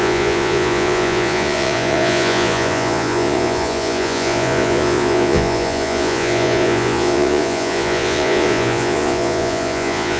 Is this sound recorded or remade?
remade